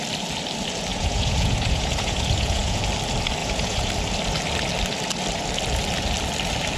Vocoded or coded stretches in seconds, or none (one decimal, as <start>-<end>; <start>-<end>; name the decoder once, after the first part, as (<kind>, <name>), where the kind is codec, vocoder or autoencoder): 0.9-2.8 (vocoder, Vocos); 3.4-3.9